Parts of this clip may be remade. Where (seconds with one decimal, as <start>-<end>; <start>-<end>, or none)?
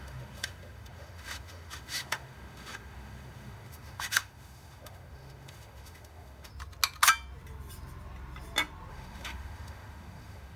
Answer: 0.0-6.5; 8.9-10.6